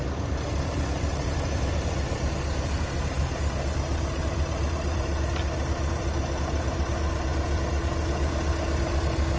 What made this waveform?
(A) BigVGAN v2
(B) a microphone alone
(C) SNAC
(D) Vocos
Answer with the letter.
A